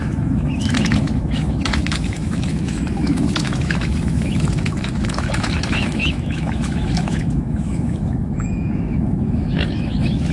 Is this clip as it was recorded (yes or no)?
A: no